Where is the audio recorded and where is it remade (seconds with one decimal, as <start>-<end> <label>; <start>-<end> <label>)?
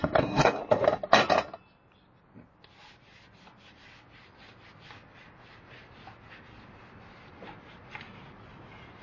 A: 0.0-0.6 remade; 0.6-9.0 recorded